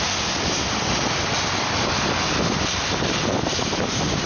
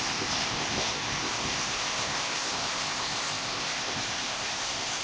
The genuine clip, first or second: first